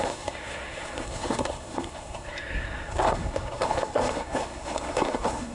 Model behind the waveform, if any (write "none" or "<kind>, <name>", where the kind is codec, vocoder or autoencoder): codec, SNAC